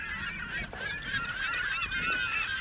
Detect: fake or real real